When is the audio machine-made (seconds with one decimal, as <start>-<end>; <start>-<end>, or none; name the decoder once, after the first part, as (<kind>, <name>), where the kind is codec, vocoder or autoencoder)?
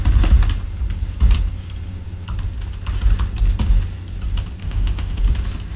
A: 4.6-5.2 (autoencoder, DAC-VAE)